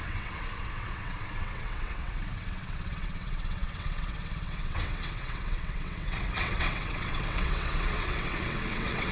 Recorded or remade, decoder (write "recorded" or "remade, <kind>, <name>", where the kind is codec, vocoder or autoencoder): remade, vocoder, WaveNeXt